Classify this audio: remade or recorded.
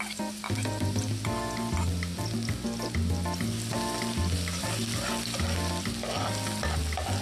recorded